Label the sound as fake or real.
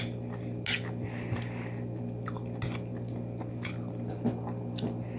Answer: real